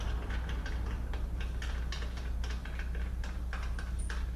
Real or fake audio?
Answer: real